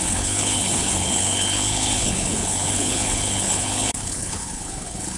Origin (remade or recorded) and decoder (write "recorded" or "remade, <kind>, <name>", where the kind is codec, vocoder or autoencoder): remade, codec, HILCodec